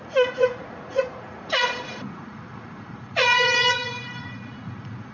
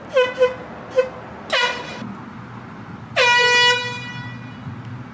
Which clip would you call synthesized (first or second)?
first